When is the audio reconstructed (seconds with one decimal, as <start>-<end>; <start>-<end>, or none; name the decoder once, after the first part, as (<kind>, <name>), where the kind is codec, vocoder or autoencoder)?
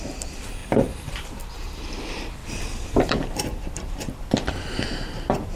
0.6-1.9 (vocoder, BigVGAN v2); 2.4-4.1